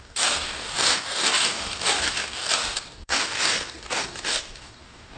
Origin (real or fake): fake